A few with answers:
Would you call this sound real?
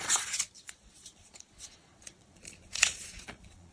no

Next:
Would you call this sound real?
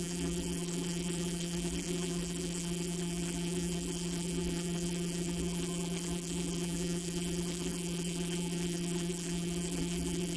no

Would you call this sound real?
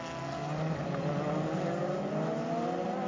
yes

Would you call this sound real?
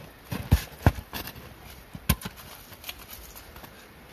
yes